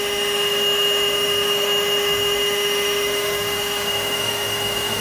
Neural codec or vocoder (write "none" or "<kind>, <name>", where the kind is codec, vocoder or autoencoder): autoencoder, DAC-VAE